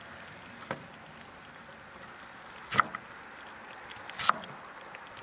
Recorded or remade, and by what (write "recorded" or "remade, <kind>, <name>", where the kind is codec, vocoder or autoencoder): recorded